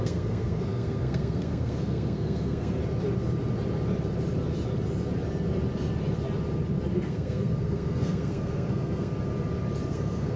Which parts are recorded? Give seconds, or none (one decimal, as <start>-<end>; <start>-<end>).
2.8-6.9; 9.1-9.9